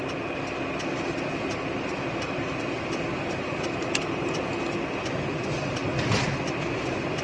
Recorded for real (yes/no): yes